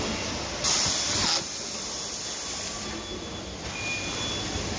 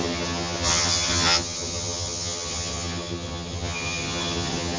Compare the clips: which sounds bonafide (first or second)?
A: first